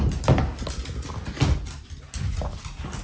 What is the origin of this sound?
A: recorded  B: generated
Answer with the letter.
A